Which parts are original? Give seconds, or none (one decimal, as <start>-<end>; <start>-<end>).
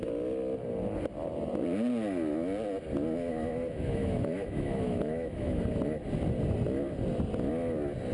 0.0-3.3; 5.6-8.1